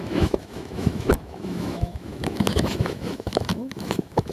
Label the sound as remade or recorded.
remade